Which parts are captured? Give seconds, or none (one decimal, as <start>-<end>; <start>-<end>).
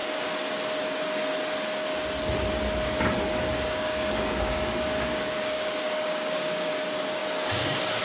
0.0-3.5; 6.7-8.0